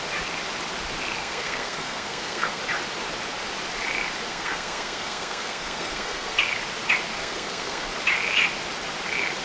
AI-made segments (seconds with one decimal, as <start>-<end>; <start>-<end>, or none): 1.2-2.6; 4.3-6.4; 7.2-7.9

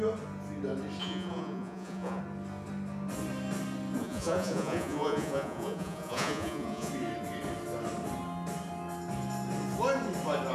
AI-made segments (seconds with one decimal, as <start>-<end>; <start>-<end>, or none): 1.0-2.2; 4.0-6.9

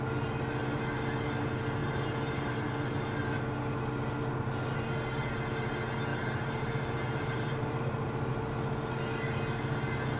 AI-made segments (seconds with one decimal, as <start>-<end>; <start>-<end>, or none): 1.8-2.7; 6.1-8.3

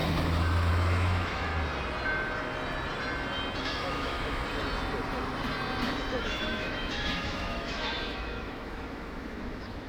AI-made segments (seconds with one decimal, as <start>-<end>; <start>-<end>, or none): 0.7-1.5; 3.6-4.4; 6.1-9.9